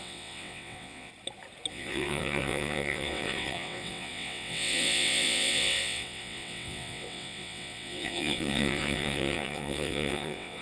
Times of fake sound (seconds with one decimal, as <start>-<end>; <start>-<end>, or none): 0.0-1.1; 1.7-10.6